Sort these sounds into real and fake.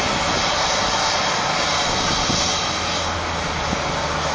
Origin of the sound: real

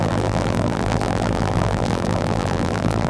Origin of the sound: fake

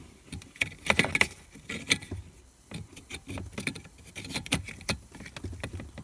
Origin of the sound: real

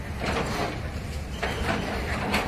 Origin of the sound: fake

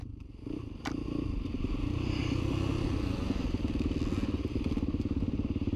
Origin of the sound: real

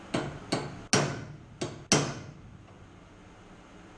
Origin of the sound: real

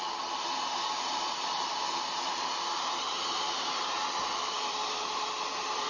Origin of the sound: fake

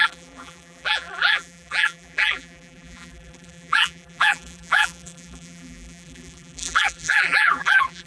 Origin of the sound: fake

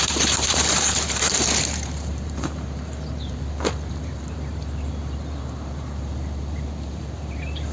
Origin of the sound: fake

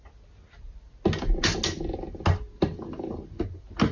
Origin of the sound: real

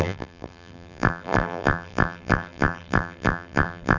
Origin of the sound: fake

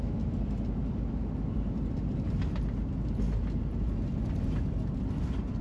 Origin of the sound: real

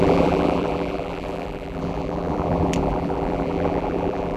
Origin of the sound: fake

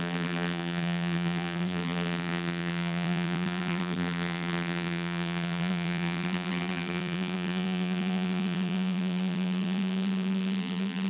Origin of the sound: fake